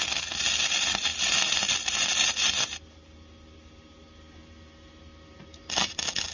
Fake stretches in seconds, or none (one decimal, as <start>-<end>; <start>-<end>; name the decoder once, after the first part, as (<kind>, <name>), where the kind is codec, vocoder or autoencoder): none